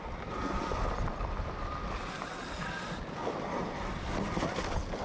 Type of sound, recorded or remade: recorded